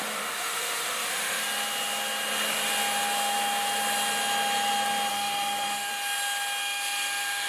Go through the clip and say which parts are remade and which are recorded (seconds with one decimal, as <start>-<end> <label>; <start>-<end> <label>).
0.0-1.4 remade; 1.4-5.1 recorded; 5.1-5.9 remade; 5.9-6.6 recorded; 6.6-7.5 remade